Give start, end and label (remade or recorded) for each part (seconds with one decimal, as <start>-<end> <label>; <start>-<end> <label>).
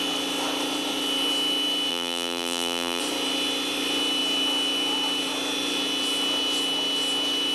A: 0.0-1.9 recorded; 1.9-3.0 remade; 3.0-7.5 recorded